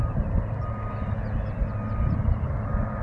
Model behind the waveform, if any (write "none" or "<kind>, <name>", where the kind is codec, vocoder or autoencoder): none